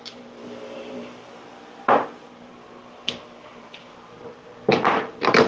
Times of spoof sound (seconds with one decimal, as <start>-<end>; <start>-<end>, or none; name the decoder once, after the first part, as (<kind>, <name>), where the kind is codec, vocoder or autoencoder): 0.0-2.5 (vocoder, BigVGAN v2); 3.6-5.5